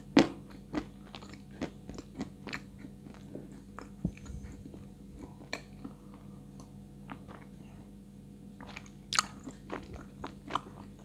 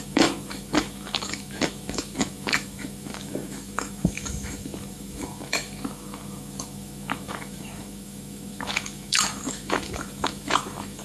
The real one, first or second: first